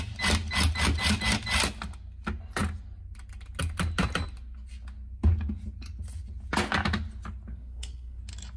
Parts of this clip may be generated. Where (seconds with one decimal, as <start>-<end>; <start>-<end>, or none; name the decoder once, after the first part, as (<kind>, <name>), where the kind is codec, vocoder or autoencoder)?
7.5-8.2 (codec, SNAC)